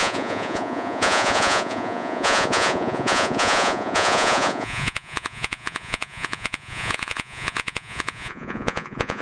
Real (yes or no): no